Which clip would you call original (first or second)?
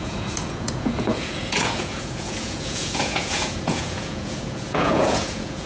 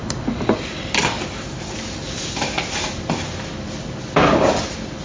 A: second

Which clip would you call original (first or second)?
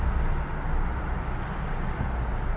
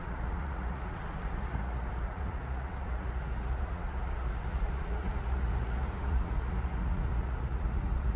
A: first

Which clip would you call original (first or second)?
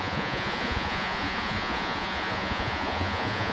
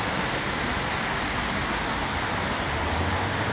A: second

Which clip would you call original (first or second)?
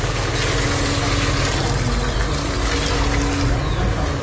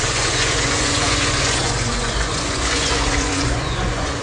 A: first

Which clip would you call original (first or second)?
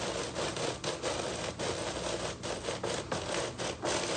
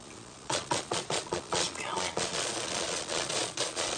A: first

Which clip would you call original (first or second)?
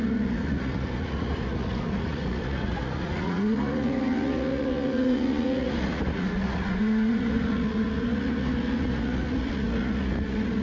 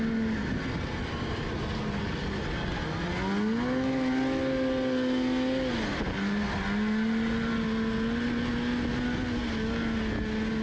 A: second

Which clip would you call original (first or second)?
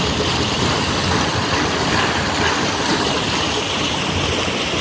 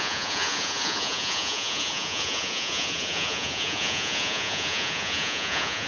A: first